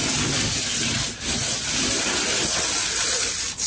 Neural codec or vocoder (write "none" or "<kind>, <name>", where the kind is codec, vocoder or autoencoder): none